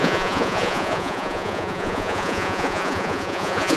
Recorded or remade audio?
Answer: remade